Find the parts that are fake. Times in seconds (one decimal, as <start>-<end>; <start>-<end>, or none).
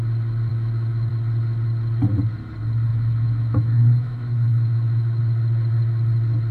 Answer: 0.5-1.1; 2.9-5.2